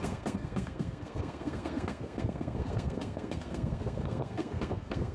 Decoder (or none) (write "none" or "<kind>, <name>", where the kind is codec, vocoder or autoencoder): codec, SNAC